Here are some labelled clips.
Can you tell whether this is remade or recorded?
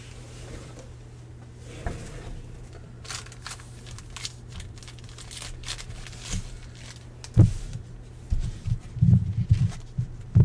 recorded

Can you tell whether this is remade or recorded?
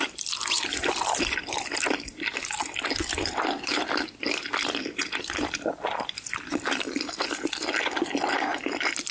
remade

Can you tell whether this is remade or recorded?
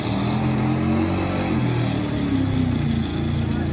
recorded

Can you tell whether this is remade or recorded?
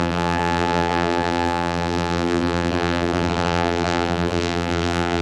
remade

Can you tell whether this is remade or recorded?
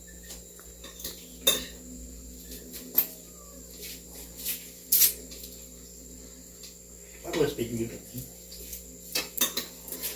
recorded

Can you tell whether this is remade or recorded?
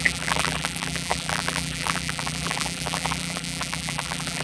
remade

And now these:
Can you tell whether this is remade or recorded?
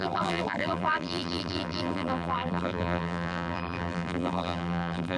remade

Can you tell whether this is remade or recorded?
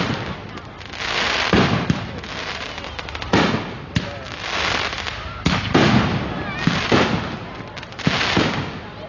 recorded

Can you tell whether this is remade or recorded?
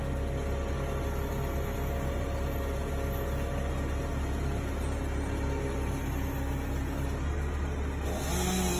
recorded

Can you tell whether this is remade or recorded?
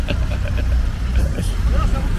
recorded